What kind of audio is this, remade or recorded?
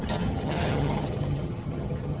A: remade